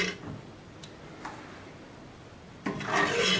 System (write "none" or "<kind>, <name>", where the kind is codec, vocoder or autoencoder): none